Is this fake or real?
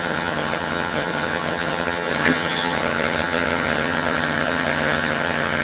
fake